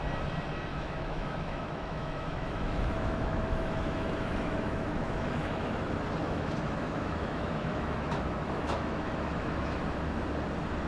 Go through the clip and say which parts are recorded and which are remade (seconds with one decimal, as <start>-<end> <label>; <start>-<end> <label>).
0.0-0.7 recorded; 0.7-5.7 remade; 5.7-6.2 recorded; 6.2-9.8 remade; 9.8-10.9 recorded